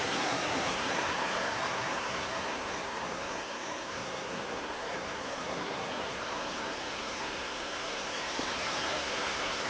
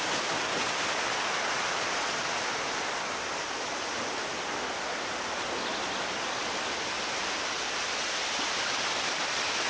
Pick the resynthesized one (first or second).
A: first